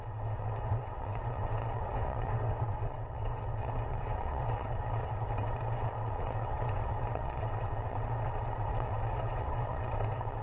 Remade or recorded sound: remade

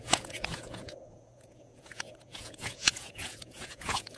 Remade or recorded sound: remade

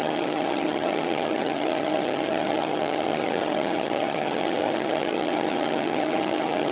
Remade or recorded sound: remade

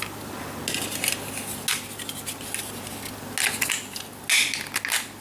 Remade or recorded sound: recorded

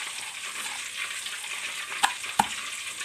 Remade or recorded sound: recorded